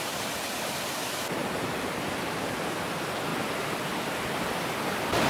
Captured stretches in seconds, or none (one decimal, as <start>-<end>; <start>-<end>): 0.0-1.4; 2.7-5.3